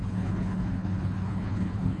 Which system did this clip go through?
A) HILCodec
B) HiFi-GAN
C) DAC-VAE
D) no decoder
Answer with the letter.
A